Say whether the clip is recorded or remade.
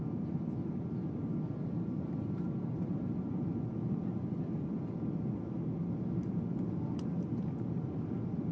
recorded